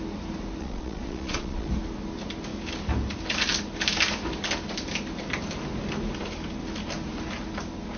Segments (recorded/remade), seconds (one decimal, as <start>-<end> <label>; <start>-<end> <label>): 0.0-0.6 recorded; 0.6-1.7 remade; 1.7-8.0 recorded